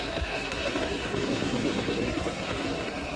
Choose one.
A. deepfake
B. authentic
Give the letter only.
A